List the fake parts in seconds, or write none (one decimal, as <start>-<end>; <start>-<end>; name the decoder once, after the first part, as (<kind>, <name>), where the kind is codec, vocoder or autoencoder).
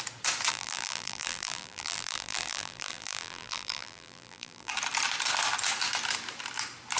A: 0.5-4.7 (vocoder, BigVGAN v2)